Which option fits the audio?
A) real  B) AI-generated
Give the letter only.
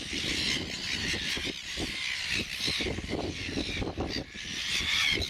A